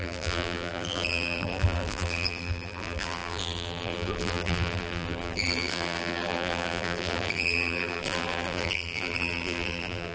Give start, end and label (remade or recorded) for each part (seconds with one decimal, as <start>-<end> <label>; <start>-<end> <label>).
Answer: 0.0-10.1 remade